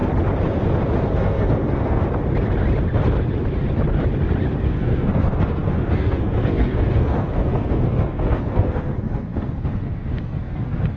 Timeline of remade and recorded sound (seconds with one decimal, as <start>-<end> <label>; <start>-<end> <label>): 0.0-1.0 recorded; 1.0-2.0 remade; 2.0-4.5 recorded; 4.5-11.0 remade